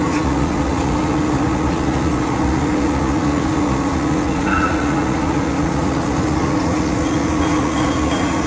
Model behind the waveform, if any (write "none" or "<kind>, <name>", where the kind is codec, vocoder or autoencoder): vocoder, Vocos